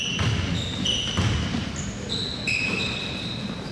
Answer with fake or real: real